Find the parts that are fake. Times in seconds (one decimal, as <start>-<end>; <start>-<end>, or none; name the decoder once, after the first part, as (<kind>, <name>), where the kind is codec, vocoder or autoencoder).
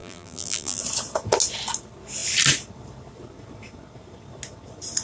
0.0-0.8 (vocoder, BigVGAN v2)